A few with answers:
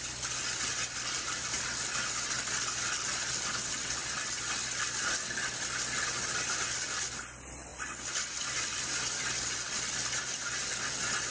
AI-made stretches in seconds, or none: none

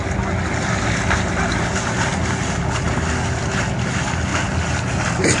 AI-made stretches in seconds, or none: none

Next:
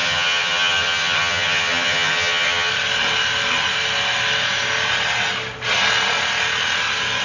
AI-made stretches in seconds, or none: 0.0-2.7 (vocoder, HiFi-GAN)

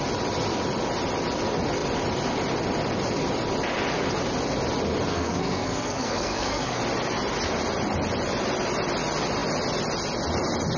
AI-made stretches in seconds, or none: 5.1-6.8 (codec, SNAC)

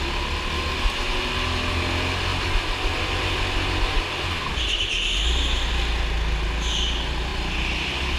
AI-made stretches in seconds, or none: none

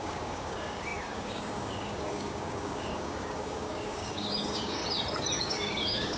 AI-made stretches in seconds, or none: 0.0-4.8 (codec, DAC); 5.4-6.2